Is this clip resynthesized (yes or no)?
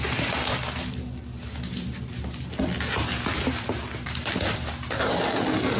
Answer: no